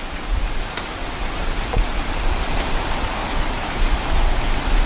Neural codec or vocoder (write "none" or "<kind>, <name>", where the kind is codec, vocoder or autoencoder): none